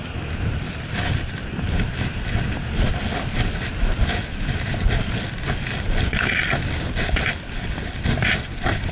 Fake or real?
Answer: real